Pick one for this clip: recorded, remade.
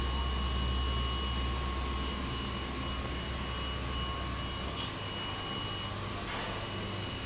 recorded